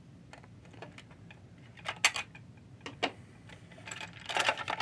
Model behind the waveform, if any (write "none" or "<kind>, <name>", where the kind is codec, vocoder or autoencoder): none